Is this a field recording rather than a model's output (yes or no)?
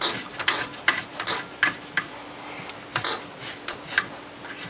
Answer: yes